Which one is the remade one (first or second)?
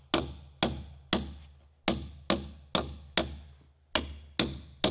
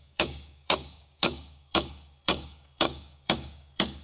second